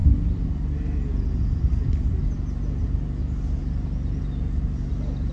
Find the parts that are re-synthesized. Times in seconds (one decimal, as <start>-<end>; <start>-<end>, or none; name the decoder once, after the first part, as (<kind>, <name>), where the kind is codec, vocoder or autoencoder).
none